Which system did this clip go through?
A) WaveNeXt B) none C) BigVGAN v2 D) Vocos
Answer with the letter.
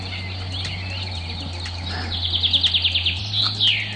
B